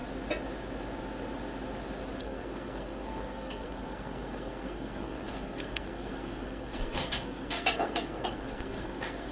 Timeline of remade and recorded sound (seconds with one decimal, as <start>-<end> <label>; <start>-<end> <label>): 0.0-2.2 recorded; 2.2-9.3 remade